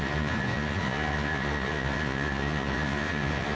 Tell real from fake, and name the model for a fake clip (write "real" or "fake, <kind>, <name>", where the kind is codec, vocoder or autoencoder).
fake, vocoder, Vocos